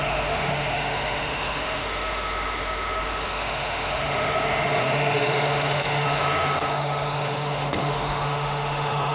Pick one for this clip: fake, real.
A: fake